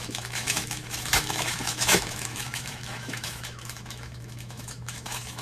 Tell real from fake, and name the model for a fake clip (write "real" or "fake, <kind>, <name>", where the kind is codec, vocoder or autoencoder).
fake, autoencoder, DAC-VAE